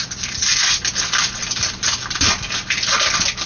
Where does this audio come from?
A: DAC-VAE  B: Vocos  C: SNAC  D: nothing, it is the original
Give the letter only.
D